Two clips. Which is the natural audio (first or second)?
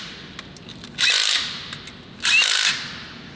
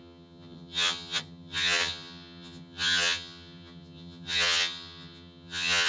first